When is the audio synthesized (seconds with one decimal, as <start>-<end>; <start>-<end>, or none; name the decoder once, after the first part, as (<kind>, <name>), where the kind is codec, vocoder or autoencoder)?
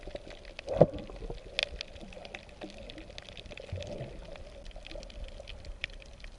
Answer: none